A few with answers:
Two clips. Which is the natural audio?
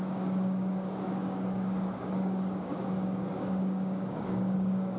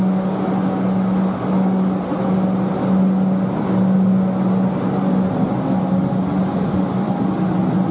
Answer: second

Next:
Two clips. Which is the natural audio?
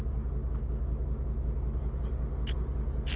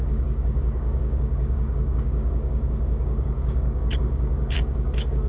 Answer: first